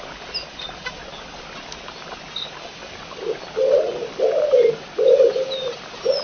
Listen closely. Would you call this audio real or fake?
real